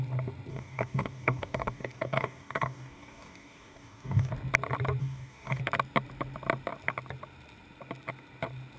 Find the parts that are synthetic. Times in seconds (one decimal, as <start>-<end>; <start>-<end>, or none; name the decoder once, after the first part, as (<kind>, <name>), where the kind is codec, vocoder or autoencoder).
0.5-4.3 (codec, DAC); 5.0-5.6